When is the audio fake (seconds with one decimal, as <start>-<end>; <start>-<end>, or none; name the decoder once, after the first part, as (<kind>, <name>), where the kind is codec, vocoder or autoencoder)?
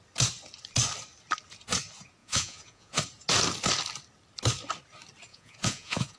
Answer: 2.2-3.0 (vocoder, Vocos); 5.3-6.2